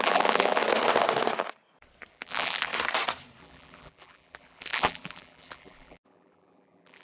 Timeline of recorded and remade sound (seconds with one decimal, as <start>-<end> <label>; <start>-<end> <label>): 0.0-0.6 remade; 0.6-2.1 recorded; 2.1-2.7 remade; 2.7-3.4 recorded; 3.4-7.0 remade